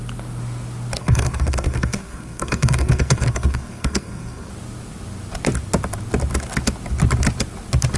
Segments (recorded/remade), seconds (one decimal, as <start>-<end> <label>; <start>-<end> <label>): 0.0-1.0 recorded; 1.0-4.5 remade; 4.5-8.0 recorded